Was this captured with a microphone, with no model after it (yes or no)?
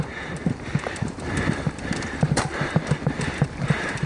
no